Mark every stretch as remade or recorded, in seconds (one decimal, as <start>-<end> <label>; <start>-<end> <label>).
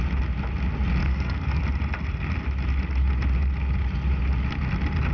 0.0-1.0 recorded; 1.0-1.6 remade; 1.6-5.1 recorded